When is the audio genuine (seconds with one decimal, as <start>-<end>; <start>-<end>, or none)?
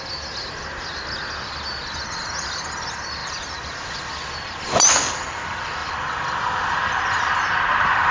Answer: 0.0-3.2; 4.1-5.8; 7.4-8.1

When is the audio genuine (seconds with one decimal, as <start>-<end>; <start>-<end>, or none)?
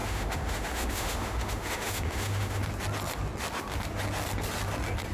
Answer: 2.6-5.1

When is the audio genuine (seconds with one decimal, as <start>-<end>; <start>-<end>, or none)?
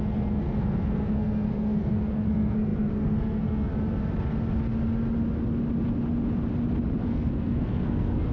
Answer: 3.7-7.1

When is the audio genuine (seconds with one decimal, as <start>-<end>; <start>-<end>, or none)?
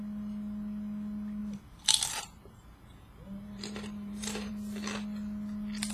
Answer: 0.0-1.4; 4.5-5.9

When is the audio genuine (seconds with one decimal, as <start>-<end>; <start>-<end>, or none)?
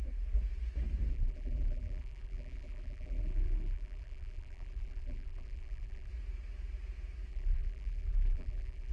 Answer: 0.0-1.1; 6.1-7.3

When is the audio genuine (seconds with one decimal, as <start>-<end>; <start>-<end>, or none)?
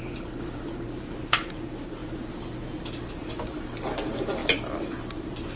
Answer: 0.0-4.4; 5.0-5.6